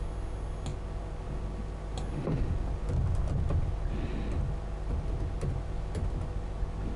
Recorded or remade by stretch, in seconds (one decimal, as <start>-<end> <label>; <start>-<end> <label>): 0.0-7.0 recorded